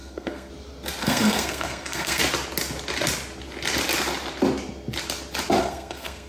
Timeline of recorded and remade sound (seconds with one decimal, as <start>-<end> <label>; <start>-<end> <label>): 0.0-0.5 remade; 0.5-1.0 recorded; 1.0-2.2 remade; 2.2-5.6 recorded; 5.6-6.3 remade